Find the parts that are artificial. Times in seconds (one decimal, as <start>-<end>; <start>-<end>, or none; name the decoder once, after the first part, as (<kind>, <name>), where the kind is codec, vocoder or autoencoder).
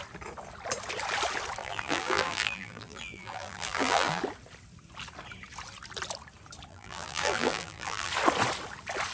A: 1.6-4.2 (vocoder, BigVGAN v2); 6.7-8.1